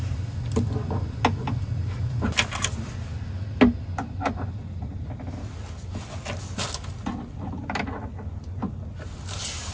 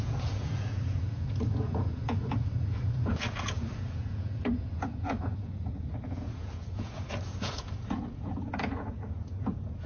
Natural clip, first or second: first